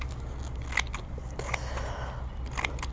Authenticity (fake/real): real